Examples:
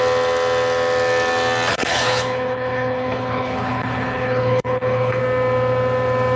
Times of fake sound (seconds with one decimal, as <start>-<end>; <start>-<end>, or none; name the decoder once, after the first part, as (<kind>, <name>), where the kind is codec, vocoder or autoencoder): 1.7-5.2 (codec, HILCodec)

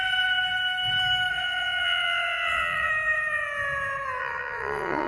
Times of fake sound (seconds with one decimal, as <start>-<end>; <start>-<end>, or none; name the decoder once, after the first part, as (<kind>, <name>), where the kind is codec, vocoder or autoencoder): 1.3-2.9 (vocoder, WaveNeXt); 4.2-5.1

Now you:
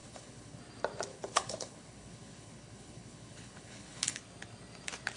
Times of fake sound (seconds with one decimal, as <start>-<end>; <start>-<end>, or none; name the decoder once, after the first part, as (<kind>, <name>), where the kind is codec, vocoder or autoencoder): 0.0-0.6 (codec, HILCodec); 1.1-4.2